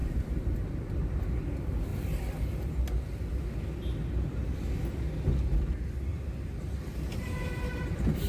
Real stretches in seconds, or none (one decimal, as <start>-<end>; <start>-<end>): 1.2-6.1